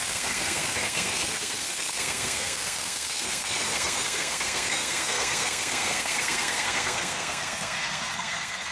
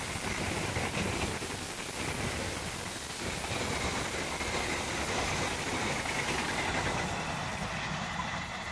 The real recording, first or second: second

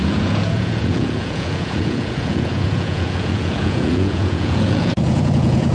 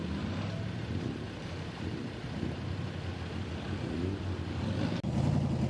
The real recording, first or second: second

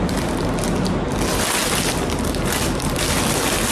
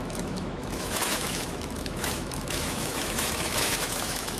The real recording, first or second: first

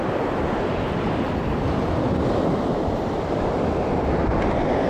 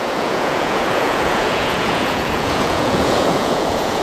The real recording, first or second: first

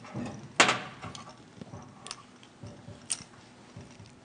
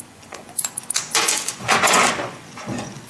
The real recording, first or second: first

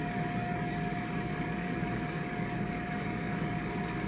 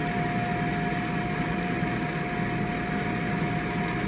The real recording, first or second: second